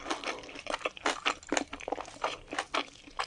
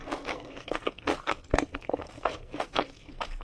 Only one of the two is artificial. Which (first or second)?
second